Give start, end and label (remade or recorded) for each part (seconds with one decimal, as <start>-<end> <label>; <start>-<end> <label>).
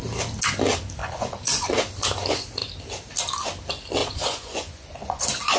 0.0-1.0 recorded; 1.0-1.8 remade; 1.8-4.0 recorded; 4.0-5.6 remade